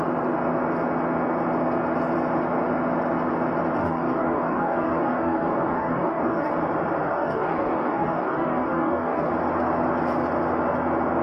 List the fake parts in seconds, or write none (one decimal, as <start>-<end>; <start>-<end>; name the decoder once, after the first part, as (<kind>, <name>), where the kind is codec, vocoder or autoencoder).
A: 3.8-6.5 (codec, DAC); 7.0-9.3